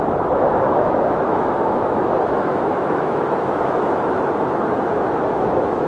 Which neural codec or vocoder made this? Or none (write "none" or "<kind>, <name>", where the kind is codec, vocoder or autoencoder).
autoencoder, DAC-VAE